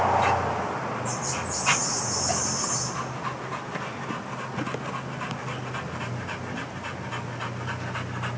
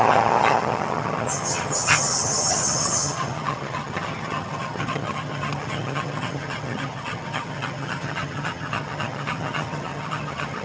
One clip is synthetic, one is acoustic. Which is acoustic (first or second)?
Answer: first